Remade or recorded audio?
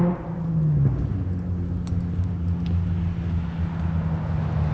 recorded